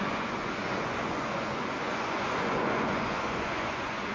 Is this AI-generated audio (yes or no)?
yes